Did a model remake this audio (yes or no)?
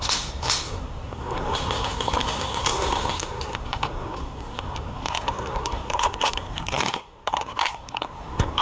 yes